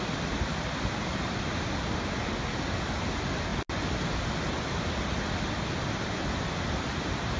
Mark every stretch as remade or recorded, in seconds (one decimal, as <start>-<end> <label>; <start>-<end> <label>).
0.0-7.4 recorded